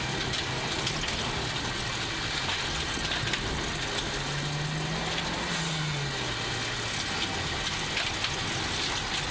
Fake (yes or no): no